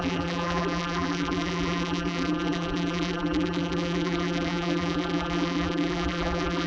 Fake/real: fake